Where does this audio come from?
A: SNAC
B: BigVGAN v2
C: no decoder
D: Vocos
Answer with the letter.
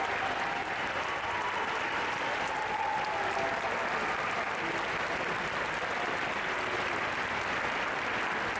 C